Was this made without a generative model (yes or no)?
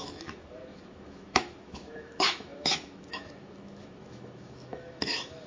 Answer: no